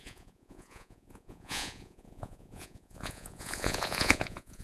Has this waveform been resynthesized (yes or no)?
yes